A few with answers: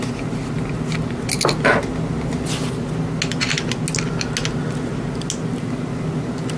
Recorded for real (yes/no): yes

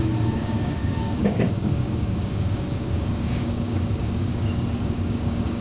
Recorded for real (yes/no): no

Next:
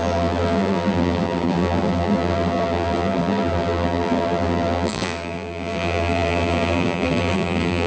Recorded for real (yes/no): no